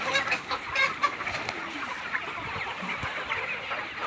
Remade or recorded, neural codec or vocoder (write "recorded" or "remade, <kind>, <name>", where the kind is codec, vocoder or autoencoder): recorded